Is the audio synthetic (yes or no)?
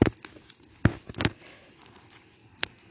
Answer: no